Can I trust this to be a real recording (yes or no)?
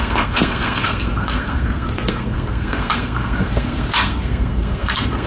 no